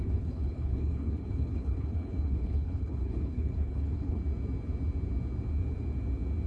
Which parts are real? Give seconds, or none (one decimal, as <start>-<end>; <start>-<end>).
4.2-6.5